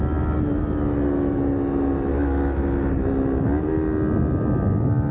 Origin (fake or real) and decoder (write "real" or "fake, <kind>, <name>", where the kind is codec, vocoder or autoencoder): real